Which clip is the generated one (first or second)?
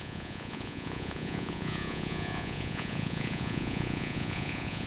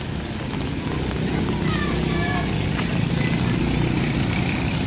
first